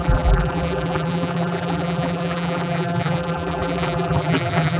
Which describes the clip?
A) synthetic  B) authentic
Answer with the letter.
A